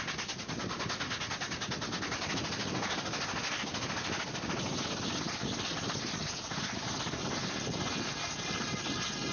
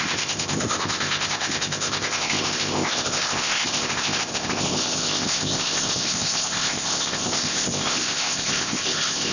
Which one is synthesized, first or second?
second